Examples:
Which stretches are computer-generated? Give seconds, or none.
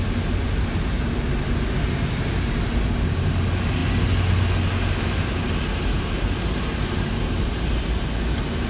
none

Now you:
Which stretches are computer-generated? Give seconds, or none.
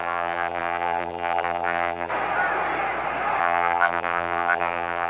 0.0-2.1 (vocoder, BigVGAN v2); 3.4-5.1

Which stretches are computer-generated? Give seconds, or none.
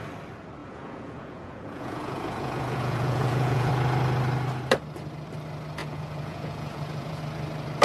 0.6-3.7 (vocoder, Vocos); 5.8-7.2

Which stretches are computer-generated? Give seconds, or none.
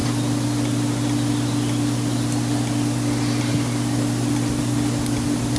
none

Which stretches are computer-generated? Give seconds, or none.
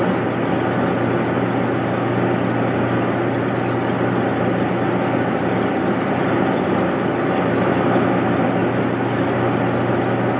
none